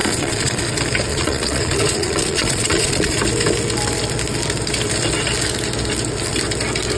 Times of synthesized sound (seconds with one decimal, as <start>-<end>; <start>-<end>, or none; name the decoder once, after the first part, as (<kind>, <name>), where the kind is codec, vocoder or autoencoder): 0.0-0.6 (vocoder, Vocos); 1.1-3.2